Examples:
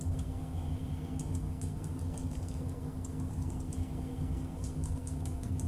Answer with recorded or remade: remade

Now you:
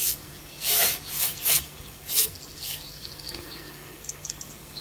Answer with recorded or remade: remade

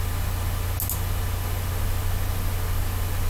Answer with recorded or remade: recorded